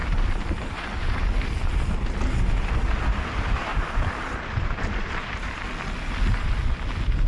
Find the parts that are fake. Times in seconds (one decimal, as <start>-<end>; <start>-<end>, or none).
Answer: 0.0-1.5; 3.7-5.6

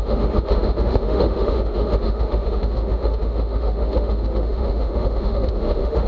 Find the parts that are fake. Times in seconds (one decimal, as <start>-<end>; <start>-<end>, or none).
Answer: 0.0-6.1

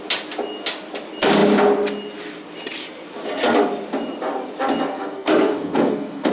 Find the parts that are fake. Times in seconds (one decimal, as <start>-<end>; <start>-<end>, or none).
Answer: 4.9-6.3

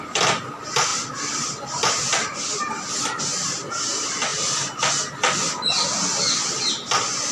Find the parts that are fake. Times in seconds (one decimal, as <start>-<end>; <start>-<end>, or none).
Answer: none

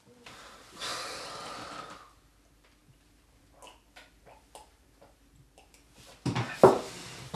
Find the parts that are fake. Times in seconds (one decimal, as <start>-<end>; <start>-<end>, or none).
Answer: none

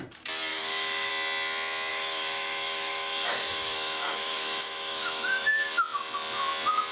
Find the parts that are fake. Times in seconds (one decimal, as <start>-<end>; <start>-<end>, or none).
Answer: 0.5-1.1; 1.9-5.6

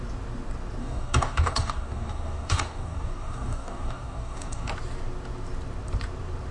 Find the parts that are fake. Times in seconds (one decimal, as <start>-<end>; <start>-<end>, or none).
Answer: 0.8-4.7

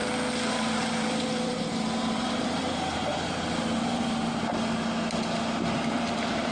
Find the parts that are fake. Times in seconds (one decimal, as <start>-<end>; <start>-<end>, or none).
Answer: 0.5-4.3; 5.9-6.5